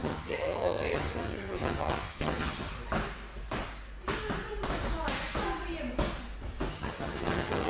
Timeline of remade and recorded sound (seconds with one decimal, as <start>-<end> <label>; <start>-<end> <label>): 0.0-2.7 remade; 2.7-6.7 recorded; 6.7-7.7 remade